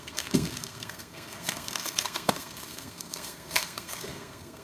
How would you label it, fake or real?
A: fake